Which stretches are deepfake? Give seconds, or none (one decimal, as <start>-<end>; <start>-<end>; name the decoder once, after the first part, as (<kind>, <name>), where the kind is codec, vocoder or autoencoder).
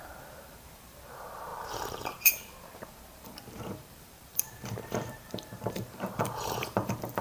0.0-7.2 (vocoder, BigVGAN v2)